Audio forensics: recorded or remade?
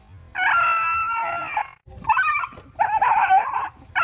recorded